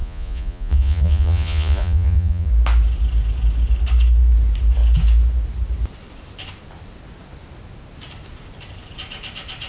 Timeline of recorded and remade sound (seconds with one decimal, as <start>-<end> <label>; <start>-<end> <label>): 0.0-2.5 remade; 2.5-9.7 recorded